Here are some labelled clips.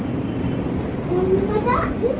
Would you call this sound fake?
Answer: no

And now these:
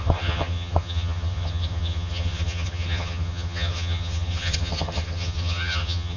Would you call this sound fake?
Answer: yes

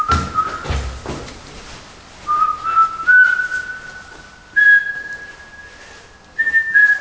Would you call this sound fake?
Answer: no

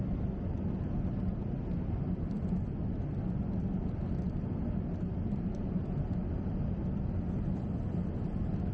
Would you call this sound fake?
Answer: no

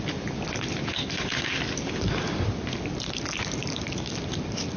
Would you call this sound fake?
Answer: no